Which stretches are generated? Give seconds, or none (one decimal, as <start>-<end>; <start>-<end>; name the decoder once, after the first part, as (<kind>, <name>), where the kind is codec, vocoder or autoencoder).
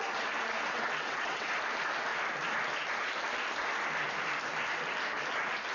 0.7-1.5 (vocoder, WaveNeXt)